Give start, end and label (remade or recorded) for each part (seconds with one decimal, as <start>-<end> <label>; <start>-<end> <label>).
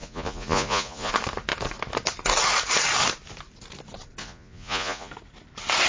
0.0-1.1 remade; 1.1-4.2 recorded; 4.2-5.1 remade; 5.1-5.9 recorded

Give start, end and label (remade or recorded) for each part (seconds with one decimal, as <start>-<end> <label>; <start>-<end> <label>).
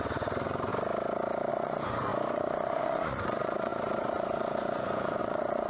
0.0-0.7 remade; 0.7-1.5 recorded; 1.5-5.7 remade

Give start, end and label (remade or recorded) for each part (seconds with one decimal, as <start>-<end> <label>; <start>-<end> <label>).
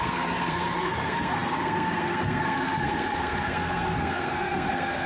0.0-5.1 remade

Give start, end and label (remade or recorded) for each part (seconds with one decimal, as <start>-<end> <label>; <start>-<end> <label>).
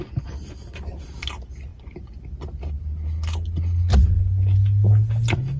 0.0-5.6 recorded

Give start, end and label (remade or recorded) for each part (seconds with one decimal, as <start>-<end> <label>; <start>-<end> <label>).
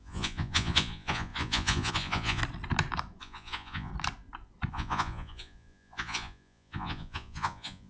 0.0-2.4 remade; 2.4-3.2 recorded; 3.2-3.9 remade; 3.9-4.7 recorded; 4.7-7.9 remade